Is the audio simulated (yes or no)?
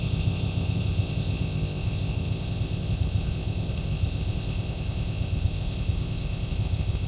yes